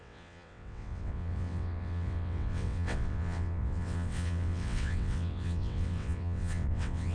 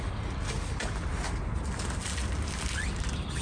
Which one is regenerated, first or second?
first